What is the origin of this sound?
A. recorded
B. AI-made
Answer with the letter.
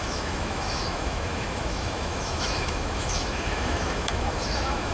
B